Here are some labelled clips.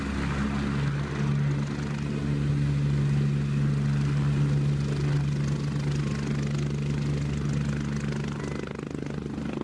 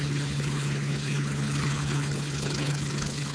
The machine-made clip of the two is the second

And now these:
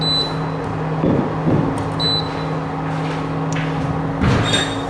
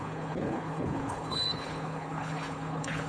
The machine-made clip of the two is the second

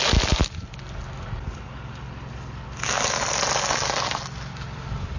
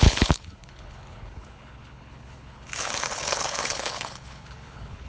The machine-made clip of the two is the second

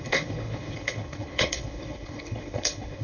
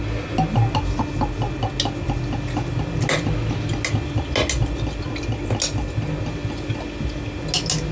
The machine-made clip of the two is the first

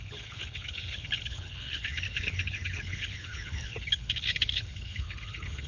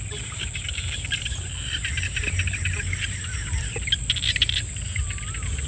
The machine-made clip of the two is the first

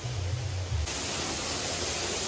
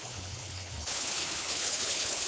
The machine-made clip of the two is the second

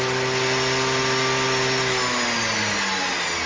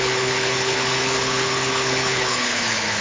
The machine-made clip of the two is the second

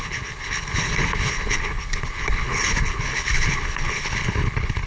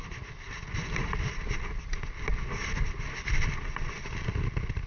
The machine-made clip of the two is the first